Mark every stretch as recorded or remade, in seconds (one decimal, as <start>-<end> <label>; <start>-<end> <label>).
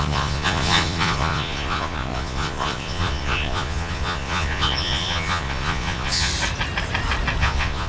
0.0-6.3 remade; 6.3-7.4 recorded; 7.4-7.9 remade